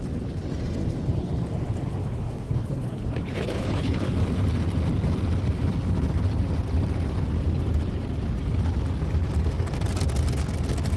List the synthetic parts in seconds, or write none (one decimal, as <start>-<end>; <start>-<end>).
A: 2.0-4.1